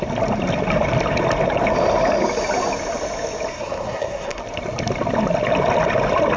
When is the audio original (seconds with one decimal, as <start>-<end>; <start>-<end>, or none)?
0.0-3.5; 4.4-6.4